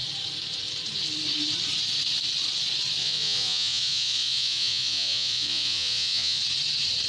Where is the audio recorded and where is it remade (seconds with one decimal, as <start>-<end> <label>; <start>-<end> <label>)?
0.0-3.0 recorded; 3.0-6.4 remade; 6.4-7.1 recorded